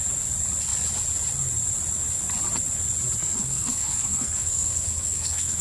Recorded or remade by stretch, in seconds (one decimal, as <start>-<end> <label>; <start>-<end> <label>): 0.0-3.2 recorded; 3.2-5.6 remade